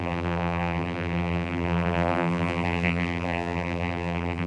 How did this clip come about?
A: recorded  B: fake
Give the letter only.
B